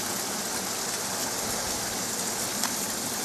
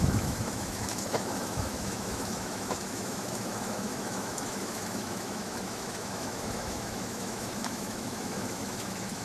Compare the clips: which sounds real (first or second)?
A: first